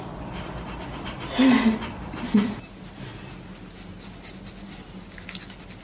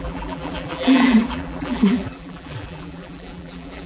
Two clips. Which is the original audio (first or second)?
first